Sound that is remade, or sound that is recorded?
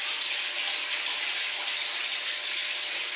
recorded